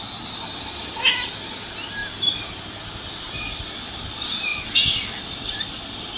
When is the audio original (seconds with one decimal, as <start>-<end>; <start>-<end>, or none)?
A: 0.0-6.2